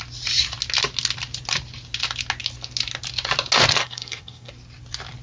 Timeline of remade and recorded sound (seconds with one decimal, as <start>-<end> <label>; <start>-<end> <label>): 0.0-3.8 recorded; 3.8-4.5 remade; 4.5-5.2 recorded